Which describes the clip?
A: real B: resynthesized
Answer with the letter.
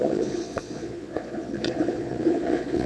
B